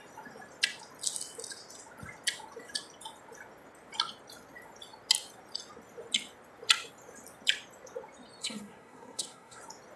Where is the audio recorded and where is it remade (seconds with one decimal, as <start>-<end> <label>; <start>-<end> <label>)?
0.0-8.4 recorded; 8.4-9.6 remade; 9.6-10.0 recorded